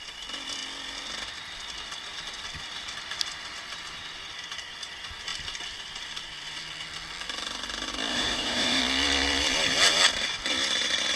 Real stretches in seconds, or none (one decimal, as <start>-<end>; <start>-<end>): 0.0-8.1; 8.8-11.2